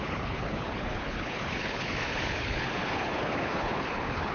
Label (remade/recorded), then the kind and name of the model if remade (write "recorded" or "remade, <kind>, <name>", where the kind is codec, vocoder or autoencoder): remade, codec, HILCodec